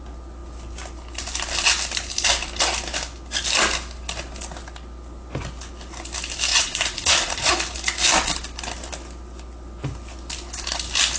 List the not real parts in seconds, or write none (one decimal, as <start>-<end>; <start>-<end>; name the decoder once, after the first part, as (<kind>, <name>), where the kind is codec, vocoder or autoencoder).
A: 6.5-7.5 (vocoder, Vocos)